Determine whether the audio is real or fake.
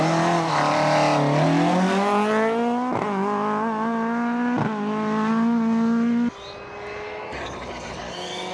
real